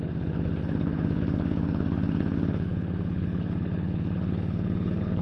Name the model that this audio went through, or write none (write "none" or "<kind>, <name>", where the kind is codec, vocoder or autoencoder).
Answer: codec, HILCodec